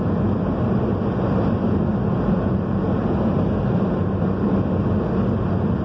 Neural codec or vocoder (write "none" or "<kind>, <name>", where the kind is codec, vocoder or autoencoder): none